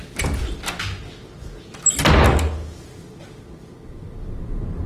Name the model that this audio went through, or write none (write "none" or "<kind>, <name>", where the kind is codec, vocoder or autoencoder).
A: none